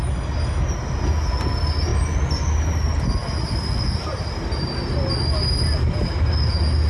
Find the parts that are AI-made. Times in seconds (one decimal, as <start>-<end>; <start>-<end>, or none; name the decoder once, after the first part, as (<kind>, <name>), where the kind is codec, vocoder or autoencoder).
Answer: none